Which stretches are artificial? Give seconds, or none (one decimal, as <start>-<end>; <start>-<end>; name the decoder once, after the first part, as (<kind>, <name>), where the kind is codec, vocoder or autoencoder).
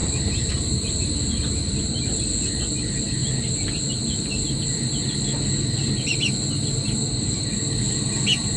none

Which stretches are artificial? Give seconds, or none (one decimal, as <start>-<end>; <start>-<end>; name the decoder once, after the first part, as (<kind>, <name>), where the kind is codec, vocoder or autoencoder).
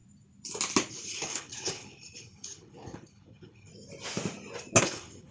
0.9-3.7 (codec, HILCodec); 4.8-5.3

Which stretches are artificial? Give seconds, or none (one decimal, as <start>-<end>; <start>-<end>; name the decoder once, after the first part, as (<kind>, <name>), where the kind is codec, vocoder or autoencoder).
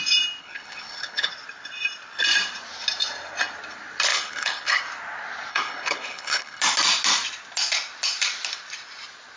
0.4-1.3 (codec, HILCodec); 4.1-4.8; 5.5-6.6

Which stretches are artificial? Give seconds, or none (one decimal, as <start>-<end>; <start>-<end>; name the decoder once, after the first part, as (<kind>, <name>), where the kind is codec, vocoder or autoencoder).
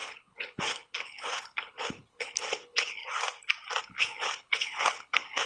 0.0-3.0 (codec, HILCodec); 3.8-5.5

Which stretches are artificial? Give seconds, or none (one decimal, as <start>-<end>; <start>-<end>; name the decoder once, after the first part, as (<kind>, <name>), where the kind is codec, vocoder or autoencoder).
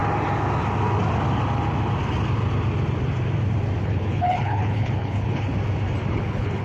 3.8-5.5 (codec, HILCodec); 6.1-6.6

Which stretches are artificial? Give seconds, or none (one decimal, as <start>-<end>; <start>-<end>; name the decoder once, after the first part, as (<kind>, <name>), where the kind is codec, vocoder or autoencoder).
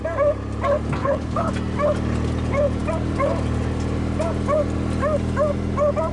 1.0-1.5 (codec, HILCodec)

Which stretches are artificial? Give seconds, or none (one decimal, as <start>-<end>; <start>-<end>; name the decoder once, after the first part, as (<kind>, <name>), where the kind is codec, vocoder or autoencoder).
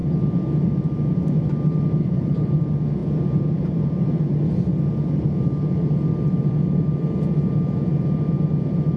2.0-2.5 (codec, HILCodec)